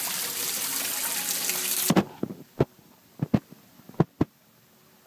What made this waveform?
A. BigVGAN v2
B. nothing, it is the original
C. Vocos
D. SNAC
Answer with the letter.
B